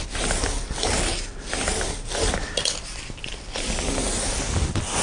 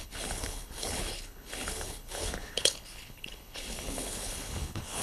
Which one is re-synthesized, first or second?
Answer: second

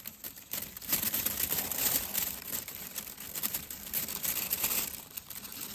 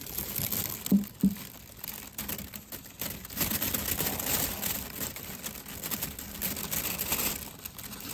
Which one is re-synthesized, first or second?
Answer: first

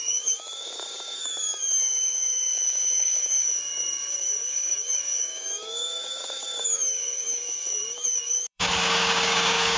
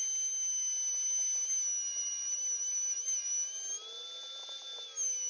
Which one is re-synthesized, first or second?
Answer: first